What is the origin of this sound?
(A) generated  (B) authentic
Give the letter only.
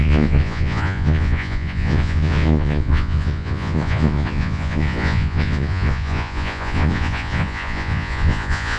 A